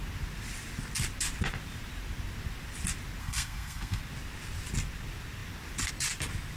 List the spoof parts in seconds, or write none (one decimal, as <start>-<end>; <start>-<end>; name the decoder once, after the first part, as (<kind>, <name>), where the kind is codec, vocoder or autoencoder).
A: 3.2-4.0 (codec, SNAC)